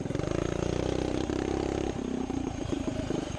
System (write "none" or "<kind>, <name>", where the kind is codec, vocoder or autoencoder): vocoder, BigVGAN v2